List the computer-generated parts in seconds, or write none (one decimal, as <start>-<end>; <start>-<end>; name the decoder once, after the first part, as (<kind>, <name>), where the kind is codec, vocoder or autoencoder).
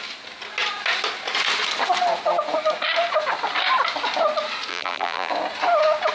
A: 4.7-5.3 (vocoder, BigVGAN v2)